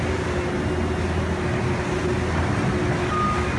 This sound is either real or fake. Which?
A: real